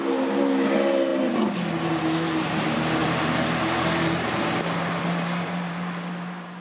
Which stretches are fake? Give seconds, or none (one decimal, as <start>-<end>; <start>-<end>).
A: none